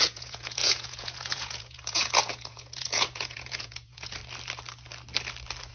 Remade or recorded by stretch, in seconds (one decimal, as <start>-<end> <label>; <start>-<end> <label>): 0.0-4.2 remade; 4.2-5.7 recorded